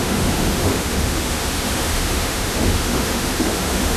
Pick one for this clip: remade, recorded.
remade